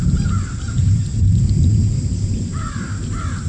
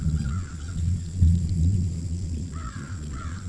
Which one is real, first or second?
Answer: first